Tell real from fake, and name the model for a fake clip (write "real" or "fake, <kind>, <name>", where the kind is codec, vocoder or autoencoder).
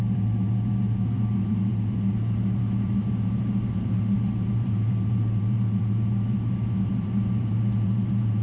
fake, vocoder, BigVGAN v2